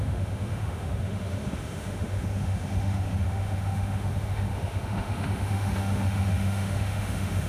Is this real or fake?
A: fake